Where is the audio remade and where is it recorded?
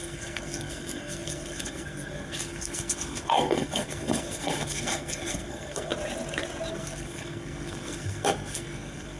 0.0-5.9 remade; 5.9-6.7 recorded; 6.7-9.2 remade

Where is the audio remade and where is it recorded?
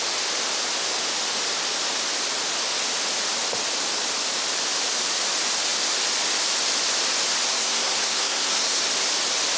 0.0-7.5 recorded; 7.5-8.8 remade; 8.8-9.6 recorded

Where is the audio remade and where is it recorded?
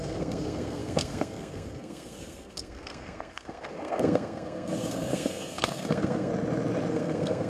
0.0-6.3 remade; 6.3-6.9 recorded; 6.9-7.5 remade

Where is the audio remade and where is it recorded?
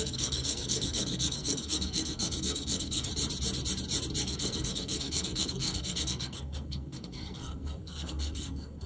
0.0-3.1 remade; 3.1-4.2 recorded; 4.2-8.9 remade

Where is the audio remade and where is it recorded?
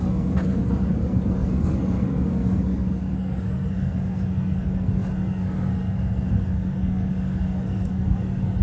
0.0-8.6 remade